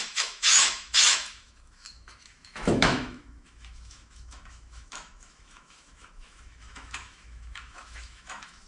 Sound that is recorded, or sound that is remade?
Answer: remade